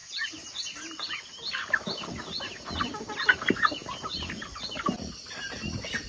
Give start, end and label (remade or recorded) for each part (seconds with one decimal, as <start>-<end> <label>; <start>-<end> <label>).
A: 0.0-6.1 recorded